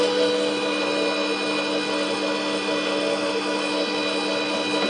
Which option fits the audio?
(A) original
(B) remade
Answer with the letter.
A